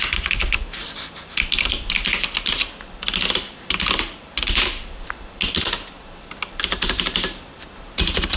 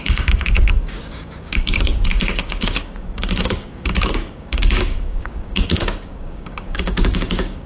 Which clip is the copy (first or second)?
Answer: second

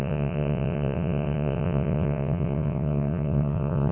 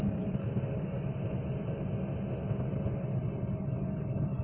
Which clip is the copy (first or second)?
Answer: first